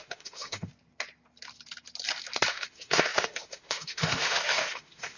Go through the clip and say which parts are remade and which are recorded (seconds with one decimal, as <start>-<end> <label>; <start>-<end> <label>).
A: 0.0-0.7 remade; 0.7-2.5 recorded; 2.5-5.2 remade